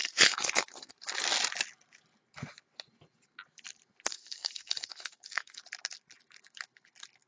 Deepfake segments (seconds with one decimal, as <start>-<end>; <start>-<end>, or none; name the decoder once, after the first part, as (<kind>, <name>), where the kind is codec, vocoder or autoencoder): 0.0-0.9 (codec, SNAC); 4.1-5.6